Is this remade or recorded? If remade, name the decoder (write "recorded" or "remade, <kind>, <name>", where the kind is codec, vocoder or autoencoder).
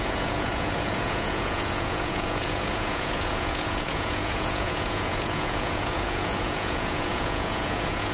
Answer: remade, vocoder, Vocos